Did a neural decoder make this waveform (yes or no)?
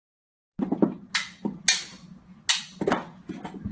no